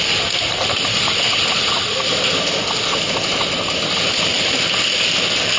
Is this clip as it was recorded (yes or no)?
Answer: yes